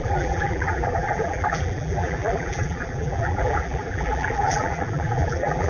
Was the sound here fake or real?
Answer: fake